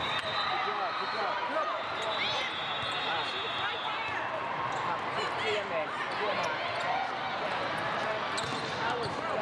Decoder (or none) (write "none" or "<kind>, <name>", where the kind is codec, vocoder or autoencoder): none